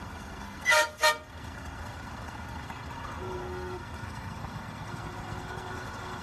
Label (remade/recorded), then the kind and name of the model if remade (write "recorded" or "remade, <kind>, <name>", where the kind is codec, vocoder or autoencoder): remade, codec, SNAC